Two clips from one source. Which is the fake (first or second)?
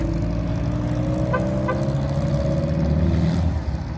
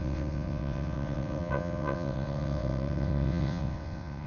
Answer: second